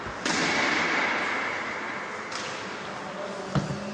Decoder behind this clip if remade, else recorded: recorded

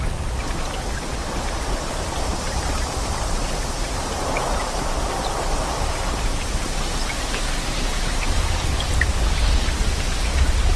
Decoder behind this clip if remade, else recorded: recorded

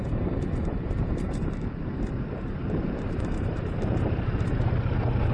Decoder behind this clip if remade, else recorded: remade, vocoder, BigVGAN v2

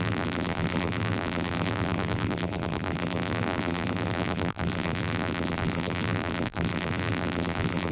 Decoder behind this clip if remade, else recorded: remade, vocoder, BigVGAN v2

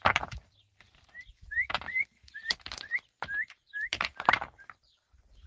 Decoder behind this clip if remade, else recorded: remade, vocoder, BigVGAN v2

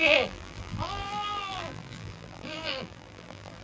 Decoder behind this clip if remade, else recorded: remade, vocoder, BigVGAN v2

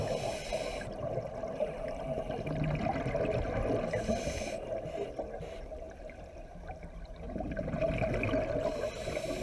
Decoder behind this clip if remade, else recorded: recorded